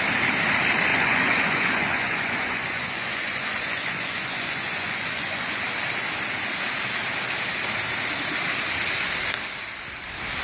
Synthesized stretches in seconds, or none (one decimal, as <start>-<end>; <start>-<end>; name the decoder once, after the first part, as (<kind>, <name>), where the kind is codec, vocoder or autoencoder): 0.9-5.6 (vocoder, Vocos)